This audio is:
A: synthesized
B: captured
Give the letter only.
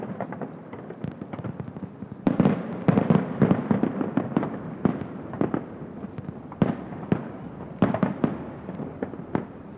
A